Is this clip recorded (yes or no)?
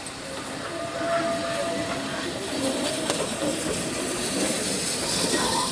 yes